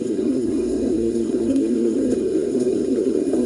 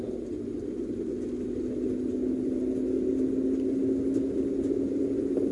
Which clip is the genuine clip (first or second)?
second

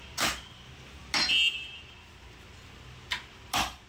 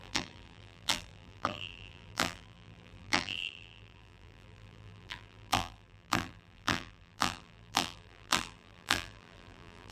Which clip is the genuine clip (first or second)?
first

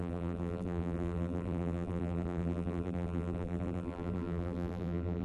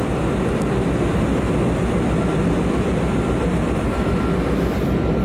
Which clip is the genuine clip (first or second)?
second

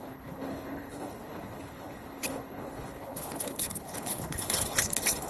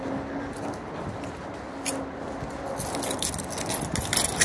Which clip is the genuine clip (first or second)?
second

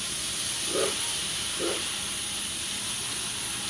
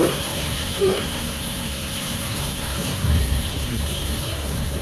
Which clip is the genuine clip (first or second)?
first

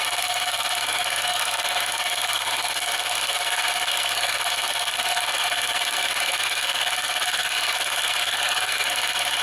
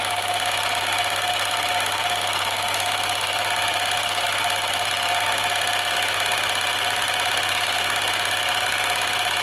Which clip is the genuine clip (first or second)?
second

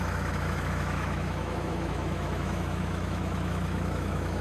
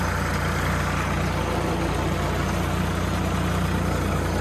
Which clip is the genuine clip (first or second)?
second